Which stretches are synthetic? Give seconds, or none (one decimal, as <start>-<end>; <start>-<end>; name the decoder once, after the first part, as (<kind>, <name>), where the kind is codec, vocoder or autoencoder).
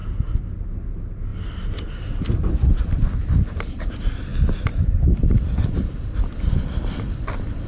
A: 0.0-0.6 (vocoder, BigVGAN v2); 1.3-2.5; 4.3-7.7